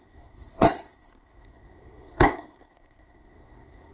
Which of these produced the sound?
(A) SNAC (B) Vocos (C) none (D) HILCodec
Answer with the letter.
A